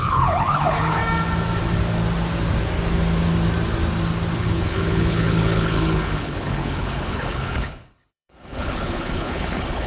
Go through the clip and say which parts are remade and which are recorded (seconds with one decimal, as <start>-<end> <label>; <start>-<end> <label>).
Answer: 0.0-1.0 remade; 1.0-4.4 recorded; 4.4-9.9 remade